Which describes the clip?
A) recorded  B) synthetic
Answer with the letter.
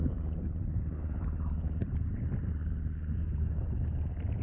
B